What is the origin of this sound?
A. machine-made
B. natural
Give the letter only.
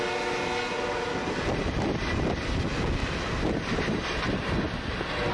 B